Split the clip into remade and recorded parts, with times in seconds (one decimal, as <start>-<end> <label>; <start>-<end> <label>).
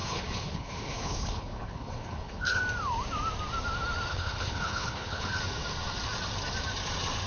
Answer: 0.0-2.6 remade; 2.6-4.1 recorded; 4.1-5.4 remade; 5.4-7.3 recorded